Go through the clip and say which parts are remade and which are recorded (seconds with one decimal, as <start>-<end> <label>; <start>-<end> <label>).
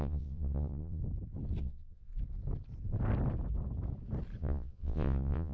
0.0-1.0 remade; 1.0-1.6 recorded; 1.6-2.1 remade; 2.1-4.4 recorded; 4.4-5.5 remade